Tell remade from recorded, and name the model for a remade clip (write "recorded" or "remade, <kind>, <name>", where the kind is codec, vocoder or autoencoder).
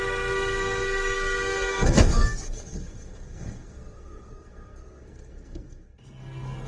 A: remade, codec, SNAC